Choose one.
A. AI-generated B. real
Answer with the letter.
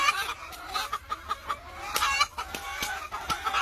B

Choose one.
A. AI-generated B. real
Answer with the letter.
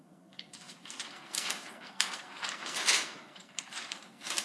A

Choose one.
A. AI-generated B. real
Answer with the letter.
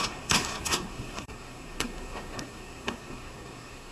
A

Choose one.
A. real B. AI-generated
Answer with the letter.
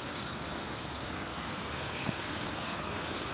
B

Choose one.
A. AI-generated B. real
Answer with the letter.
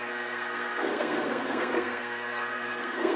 A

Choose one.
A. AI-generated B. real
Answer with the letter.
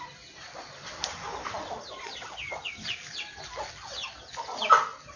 B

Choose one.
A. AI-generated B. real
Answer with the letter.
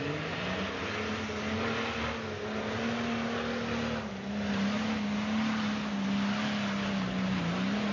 B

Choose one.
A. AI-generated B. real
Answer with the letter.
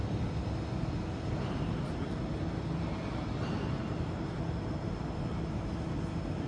B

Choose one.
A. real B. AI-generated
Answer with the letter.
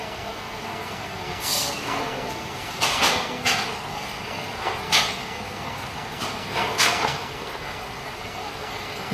B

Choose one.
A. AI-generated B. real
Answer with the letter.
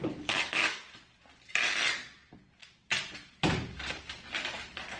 B